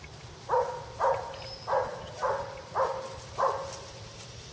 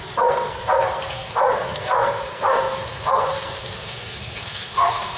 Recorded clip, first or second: first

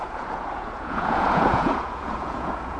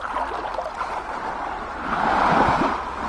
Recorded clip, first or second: second